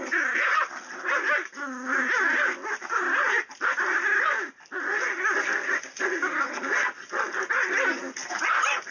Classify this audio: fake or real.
real